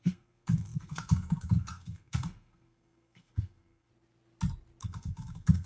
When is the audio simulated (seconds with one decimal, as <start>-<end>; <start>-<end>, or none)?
0.0-3.9; 4.8-5.7